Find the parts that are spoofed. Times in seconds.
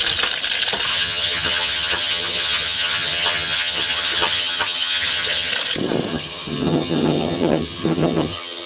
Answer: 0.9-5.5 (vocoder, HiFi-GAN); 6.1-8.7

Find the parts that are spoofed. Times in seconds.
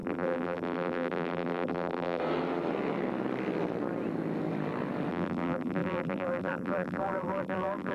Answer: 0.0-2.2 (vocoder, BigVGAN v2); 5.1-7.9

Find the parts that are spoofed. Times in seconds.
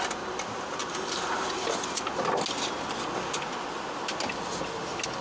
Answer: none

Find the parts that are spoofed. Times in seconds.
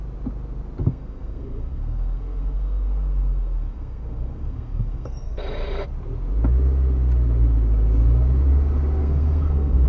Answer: 0.8-5.4 (codec, SNAC); 9.0-9.9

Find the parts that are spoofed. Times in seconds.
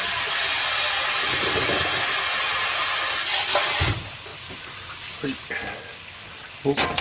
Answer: none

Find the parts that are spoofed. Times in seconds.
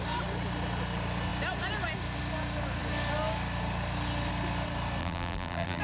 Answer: 5.0-5.8 (vocoder, BigVGAN v2)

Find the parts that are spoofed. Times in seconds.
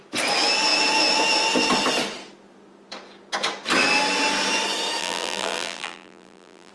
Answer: 5.0-6.7 (vocoder, BigVGAN v2)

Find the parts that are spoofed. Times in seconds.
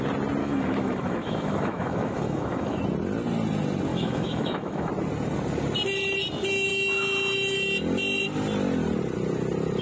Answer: 0.4-2.8 (autoencoder, DAC-VAE); 3.9-4.9